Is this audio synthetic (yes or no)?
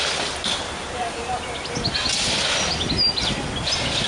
no